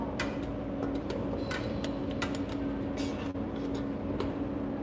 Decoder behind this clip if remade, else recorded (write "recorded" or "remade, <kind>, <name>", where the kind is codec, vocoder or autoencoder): recorded